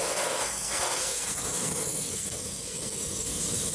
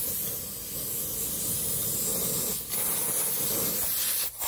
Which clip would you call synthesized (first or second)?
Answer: first